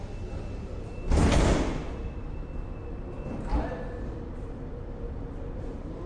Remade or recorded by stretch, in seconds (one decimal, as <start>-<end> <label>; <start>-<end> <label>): 0.0-0.9 remade; 0.9-3.6 recorded; 3.6-6.1 remade